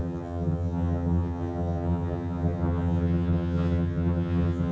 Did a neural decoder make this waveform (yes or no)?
yes